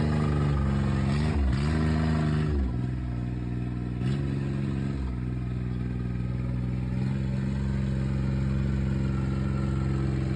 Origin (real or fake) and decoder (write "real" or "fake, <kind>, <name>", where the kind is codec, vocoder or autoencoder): real